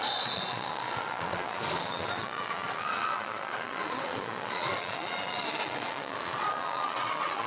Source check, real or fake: fake